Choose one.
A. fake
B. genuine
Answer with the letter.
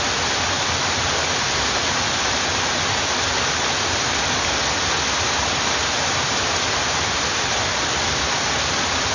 B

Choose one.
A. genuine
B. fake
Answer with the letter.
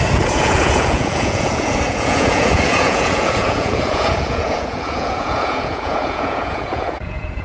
B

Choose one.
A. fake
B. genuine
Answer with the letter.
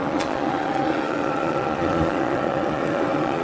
A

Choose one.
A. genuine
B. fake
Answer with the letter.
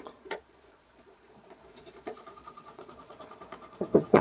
B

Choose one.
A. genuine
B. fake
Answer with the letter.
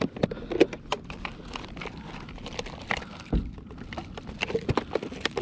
A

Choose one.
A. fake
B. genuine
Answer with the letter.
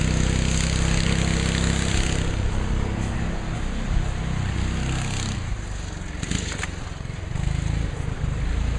B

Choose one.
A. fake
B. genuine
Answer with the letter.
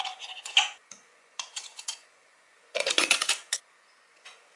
A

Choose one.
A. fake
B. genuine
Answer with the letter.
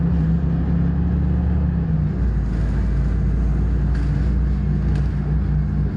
B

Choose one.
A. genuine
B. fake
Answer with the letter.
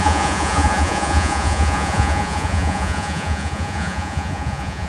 B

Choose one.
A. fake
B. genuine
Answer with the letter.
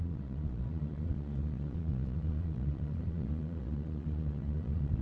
A